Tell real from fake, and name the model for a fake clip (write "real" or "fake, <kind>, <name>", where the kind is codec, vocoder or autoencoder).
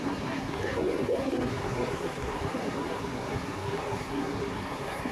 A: fake, codec, SNAC